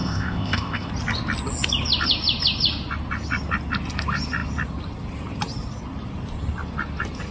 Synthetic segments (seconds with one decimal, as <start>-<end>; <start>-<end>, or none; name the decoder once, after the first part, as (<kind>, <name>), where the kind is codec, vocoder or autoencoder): 0.0-0.9 (codec, ZipCodec)